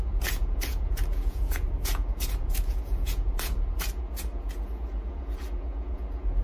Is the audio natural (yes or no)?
no